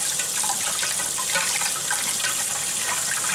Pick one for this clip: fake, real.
real